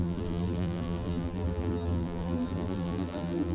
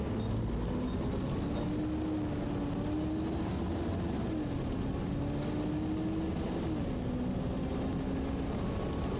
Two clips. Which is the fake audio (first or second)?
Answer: first